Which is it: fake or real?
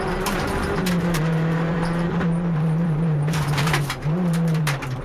fake